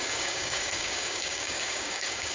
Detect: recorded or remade remade